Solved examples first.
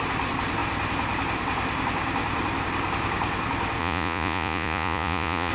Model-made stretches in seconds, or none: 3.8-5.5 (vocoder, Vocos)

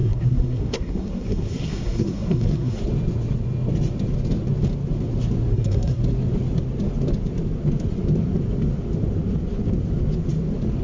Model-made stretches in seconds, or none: 0.0-2.8 (codec, SNAC); 5.5-6.0

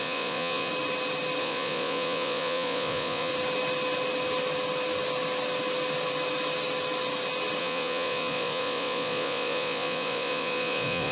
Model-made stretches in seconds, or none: 0.0-0.7 (vocoder, Vocos); 1.4-3.3; 7.6-11.1

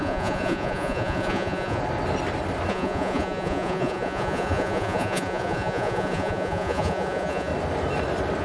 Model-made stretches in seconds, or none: 0.0-1.8 (vocoder, Vocos); 2.7-7.5